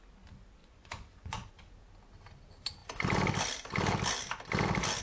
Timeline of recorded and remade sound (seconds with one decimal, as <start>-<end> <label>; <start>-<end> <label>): 0.0-0.6 recorded; 0.6-1.5 remade; 1.5-5.0 recorded